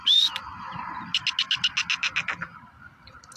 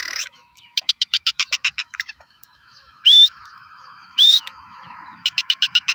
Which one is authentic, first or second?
first